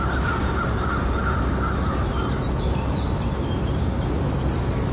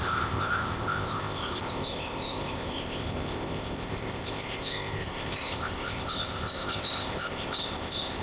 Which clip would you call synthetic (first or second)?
second